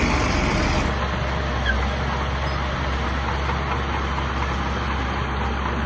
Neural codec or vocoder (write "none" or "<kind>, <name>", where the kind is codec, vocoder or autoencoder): none